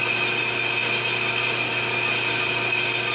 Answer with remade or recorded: recorded